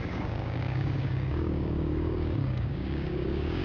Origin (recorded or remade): remade